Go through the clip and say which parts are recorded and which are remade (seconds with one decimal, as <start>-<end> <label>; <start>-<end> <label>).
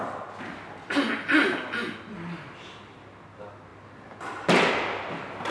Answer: 0.0-5.5 recorded